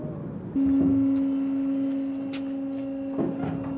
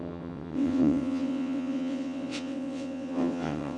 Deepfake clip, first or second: second